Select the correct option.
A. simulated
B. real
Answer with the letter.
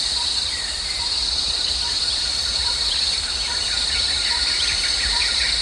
A